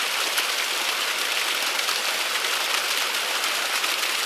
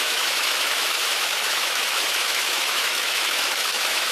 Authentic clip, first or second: first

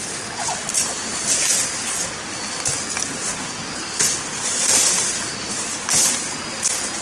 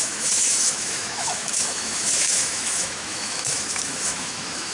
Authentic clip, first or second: first